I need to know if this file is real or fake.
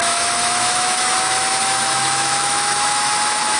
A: fake